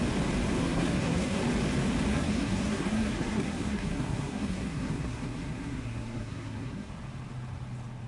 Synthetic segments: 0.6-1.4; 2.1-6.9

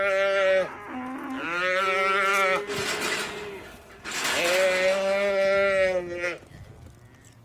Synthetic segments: none

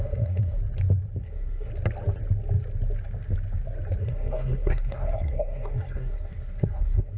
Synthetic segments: 0.0-0.6; 1.2-1.7; 4.0-7.2

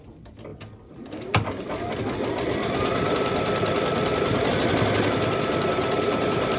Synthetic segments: none

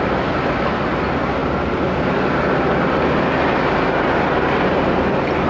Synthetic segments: none

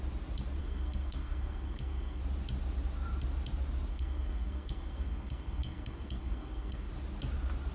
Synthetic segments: 0.6-2.2; 3.9-6.9

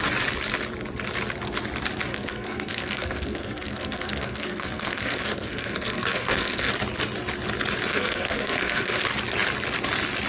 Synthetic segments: 2.1-6.7; 7.9-9.0

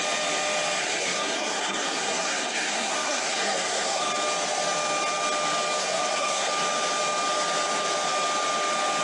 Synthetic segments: 0.8-4.1; 5.8-6.5